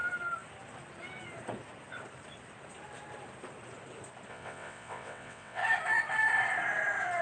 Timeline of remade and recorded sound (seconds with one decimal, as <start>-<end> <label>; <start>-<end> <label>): 0.0-4.3 recorded; 4.3-5.6 remade; 5.6-7.2 recorded